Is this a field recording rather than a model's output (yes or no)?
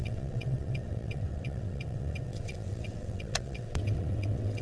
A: no